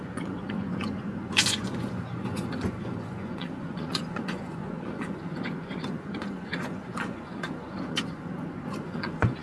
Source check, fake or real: fake